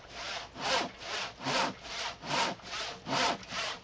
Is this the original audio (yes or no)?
yes